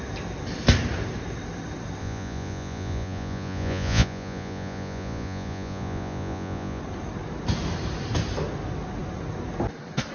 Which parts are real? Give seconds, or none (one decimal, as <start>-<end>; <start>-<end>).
0.0-2.0; 6.8-10.1